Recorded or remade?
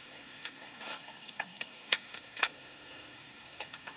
remade